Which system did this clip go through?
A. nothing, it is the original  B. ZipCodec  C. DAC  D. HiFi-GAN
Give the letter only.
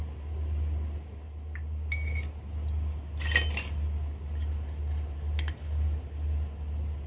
A